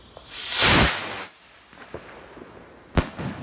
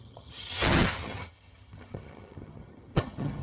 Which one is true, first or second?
first